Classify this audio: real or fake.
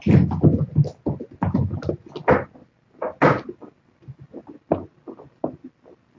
real